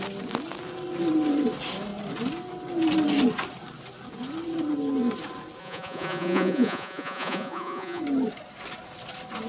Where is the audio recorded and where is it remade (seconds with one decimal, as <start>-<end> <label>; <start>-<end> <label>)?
0.0-5.6 recorded; 5.6-8.0 remade; 8.0-9.5 recorded